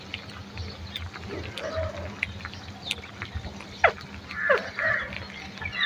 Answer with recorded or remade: recorded